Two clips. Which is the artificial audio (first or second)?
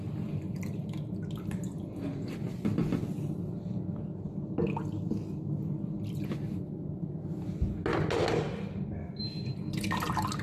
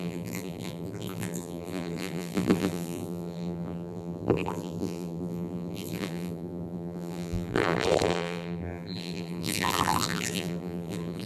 second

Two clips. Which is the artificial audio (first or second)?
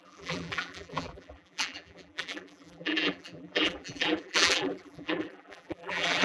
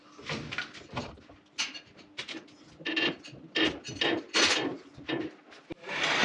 first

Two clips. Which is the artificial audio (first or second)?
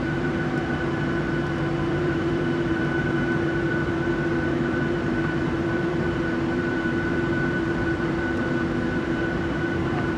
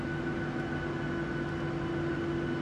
first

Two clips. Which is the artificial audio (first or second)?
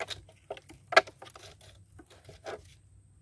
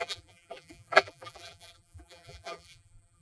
second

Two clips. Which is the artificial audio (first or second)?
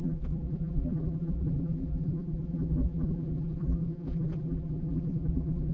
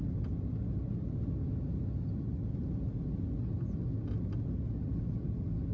first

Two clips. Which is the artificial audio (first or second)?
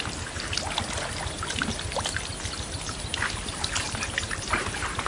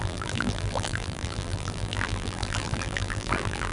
second